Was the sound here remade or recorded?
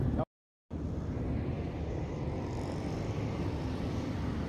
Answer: recorded